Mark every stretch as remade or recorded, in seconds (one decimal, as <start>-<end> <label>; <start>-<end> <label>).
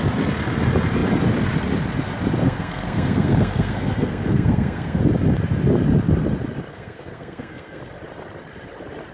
0.0-2.4 recorded; 2.4-5.0 remade; 5.0-6.7 recorded; 6.7-7.8 remade; 7.8-9.1 recorded